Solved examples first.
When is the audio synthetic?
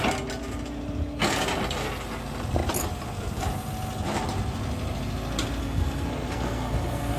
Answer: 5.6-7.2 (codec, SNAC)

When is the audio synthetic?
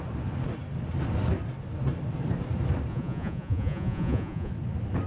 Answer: 2.9-4.5 (vocoder, Vocos)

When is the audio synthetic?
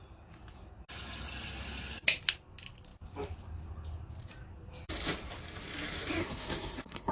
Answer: 6.2-7.1 (codec, SNAC)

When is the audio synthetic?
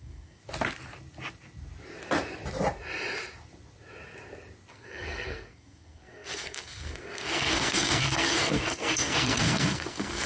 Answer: 0.0-0.4 (codec, SNAC); 4.7-10.3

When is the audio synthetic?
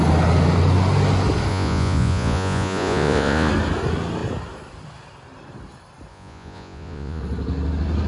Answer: 1.5-3.5 (vocoder, Vocos); 6.1-7.2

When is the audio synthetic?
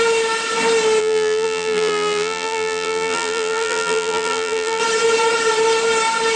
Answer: 1.0-4.8 (vocoder, BigVGAN v2)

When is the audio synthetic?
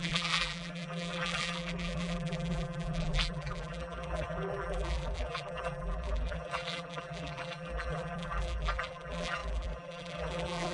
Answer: 0.0-10.7 (vocoder, BigVGAN v2)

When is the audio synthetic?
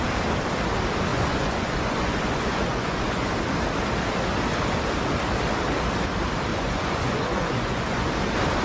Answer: 1.1-3.3 (vocoder, Vocos); 6.5-8.1